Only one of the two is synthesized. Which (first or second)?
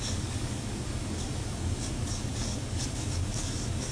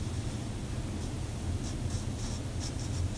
first